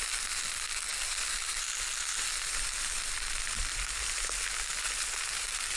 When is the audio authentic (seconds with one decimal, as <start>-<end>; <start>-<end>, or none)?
0.0-5.8